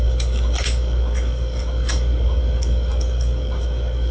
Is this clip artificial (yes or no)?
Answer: yes